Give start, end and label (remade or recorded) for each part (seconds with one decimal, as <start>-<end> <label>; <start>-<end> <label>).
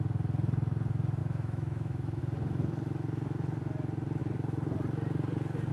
0.0-1.2 recorded; 1.2-2.2 remade; 2.2-5.7 recorded